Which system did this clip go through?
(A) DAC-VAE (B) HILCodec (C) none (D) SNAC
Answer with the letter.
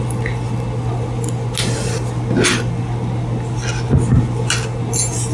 C